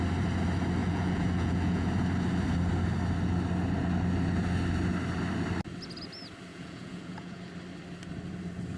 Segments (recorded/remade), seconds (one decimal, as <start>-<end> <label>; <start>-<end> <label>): 0.0-0.8 recorded; 0.8-1.9 remade; 1.9-6.5 recorded; 6.5-7.4 remade; 7.4-8.8 recorded